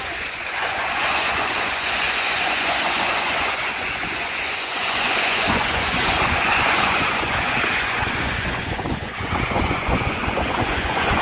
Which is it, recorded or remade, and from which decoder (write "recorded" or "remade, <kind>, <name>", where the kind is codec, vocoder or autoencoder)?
remade, vocoder, Vocos